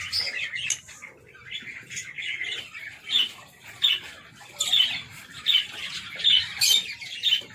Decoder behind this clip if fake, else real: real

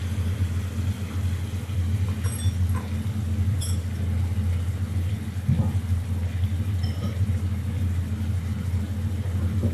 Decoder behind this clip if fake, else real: real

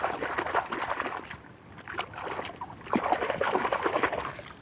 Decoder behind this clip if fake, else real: real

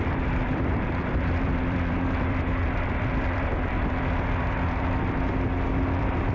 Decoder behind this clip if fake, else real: fake, vocoder, BigVGAN v2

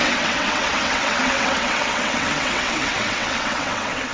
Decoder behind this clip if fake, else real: fake, vocoder, WaveNeXt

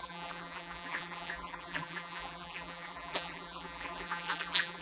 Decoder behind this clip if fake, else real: fake, vocoder, BigVGAN v2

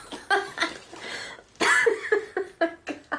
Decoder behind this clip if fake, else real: real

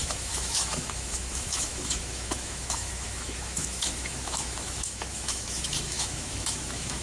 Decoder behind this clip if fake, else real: fake, autoencoder, DAC-VAE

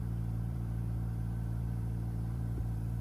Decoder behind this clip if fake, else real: fake, vocoder, BigVGAN v2